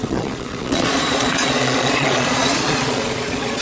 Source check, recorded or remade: remade